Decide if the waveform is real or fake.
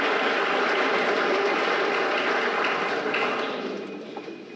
real